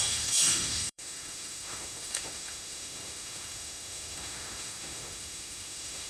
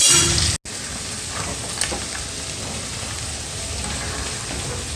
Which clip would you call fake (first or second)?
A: first